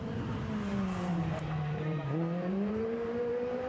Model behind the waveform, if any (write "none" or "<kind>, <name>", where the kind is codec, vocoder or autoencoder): vocoder, BigVGAN v2